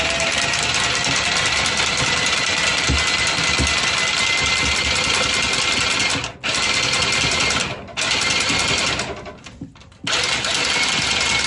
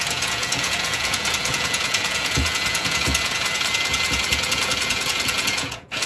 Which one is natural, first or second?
first